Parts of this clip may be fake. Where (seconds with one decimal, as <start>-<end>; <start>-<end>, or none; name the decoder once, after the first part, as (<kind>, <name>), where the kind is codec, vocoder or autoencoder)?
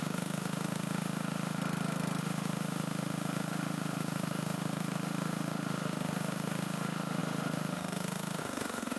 0.0-1.6 (autoencoder, DAC-VAE); 2.2-9.0